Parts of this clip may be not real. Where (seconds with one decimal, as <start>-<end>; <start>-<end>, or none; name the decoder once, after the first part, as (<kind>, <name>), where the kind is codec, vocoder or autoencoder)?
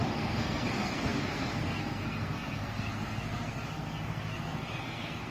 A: 0.0-5.3 (codec, SNAC)